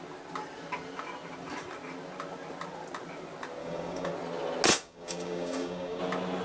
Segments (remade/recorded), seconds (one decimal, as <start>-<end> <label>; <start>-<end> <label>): 0.0-3.6 recorded; 3.6-4.1 remade; 4.1-4.7 recorded; 4.7-6.0 remade; 6.0-6.4 recorded